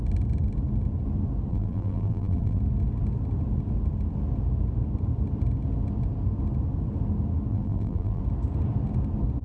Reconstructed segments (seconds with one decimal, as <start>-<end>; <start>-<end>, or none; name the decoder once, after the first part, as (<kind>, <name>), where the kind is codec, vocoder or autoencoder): 1.5-2.6 (vocoder, BigVGAN v2); 7.5-8.2